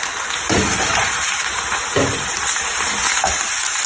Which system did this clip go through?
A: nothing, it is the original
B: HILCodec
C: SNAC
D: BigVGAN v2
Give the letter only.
D